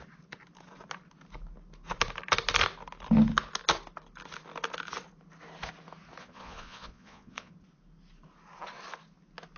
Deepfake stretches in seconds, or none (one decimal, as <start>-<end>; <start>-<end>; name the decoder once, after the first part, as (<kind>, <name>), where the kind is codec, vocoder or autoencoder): 6.2-7.5 (vocoder, Vocos)